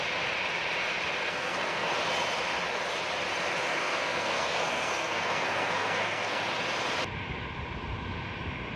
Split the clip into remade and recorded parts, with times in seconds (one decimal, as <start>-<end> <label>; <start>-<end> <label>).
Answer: 0.0-1.2 recorded; 1.2-1.9 remade; 1.9-3.7 recorded; 3.7-6.4 remade; 6.4-8.8 recorded